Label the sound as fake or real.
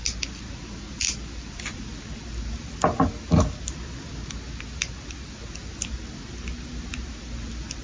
real